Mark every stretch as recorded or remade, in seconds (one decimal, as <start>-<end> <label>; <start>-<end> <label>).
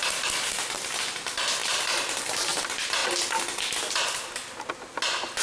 0.0-1.6 recorded; 1.6-2.2 remade; 2.2-5.4 recorded